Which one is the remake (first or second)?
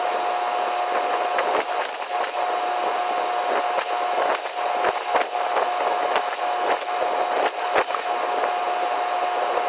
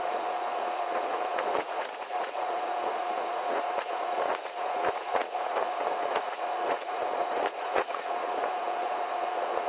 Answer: second